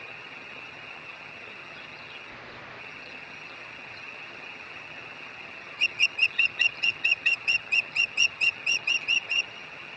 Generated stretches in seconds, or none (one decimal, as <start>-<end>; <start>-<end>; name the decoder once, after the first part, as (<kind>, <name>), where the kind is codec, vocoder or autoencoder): 0.0-2.3 (vocoder, HiFi-GAN); 2.8-10.0